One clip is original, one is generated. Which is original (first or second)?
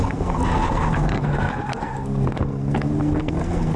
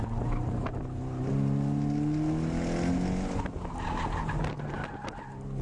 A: second